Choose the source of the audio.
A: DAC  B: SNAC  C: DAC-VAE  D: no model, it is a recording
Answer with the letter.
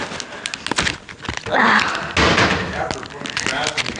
D